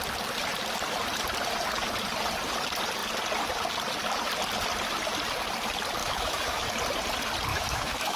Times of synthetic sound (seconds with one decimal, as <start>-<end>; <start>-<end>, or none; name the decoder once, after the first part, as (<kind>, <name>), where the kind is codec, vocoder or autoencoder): 6.0-6.7 (autoencoder, DAC-VAE); 7.5-8.2